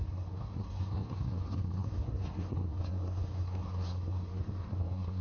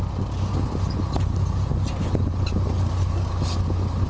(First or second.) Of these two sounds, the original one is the second